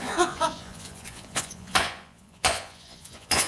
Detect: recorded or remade remade